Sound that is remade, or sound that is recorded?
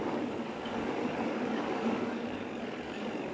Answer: remade